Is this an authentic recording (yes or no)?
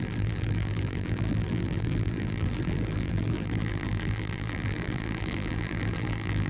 no